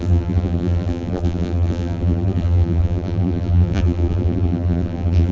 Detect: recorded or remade remade